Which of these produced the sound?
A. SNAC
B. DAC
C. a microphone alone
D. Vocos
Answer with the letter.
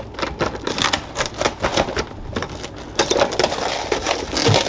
C